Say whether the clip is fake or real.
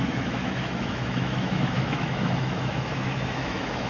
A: fake